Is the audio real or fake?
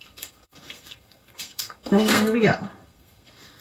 fake